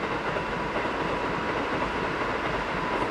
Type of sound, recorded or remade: recorded